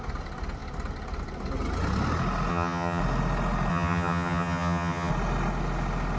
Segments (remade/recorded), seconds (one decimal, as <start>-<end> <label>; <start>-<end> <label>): 0.0-2.5 recorded; 2.5-3.0 remade; 3.0-3.7 recorded; 3.7-5.1 remade; 5.1-6.2 recorded